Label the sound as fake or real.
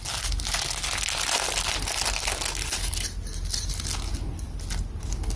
real